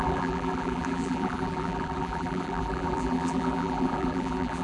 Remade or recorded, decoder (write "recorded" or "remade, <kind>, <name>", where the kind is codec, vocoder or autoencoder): remade, vocoder, BigVGAN v2